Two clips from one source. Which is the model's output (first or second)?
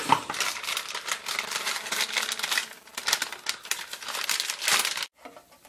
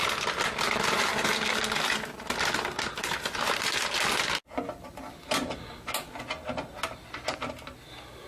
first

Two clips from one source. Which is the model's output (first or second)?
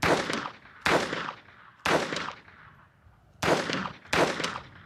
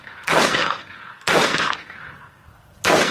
second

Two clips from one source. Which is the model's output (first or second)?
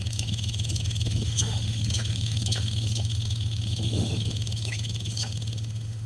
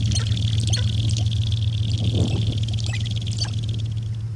first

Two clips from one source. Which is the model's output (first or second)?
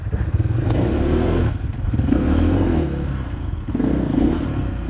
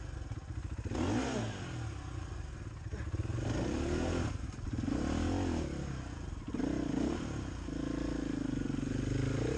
first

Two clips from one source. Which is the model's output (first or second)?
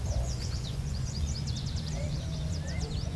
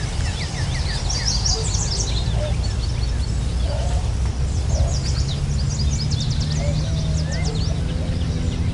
first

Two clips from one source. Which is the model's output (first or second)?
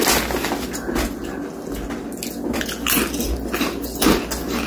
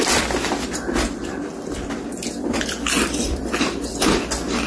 second